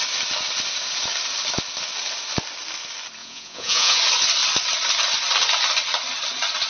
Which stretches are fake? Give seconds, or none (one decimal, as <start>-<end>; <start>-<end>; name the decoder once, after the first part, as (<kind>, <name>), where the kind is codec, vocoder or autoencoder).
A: 3.2-4.0 (vocoder, Vocos)